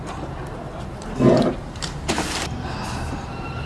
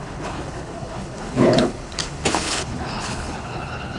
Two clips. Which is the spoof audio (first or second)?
second